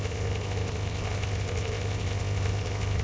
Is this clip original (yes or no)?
no